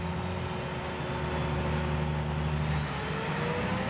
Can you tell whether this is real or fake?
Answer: real